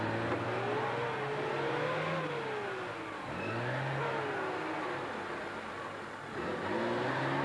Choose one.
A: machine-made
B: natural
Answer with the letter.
B